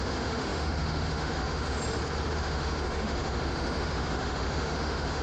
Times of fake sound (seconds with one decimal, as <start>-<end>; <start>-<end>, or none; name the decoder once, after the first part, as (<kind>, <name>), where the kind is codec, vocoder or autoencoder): 0.0-1.8 (autoencoder, DAC-VAE); 2.3-5.2